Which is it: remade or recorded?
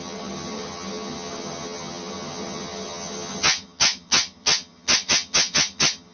remade